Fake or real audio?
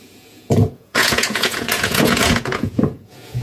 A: fake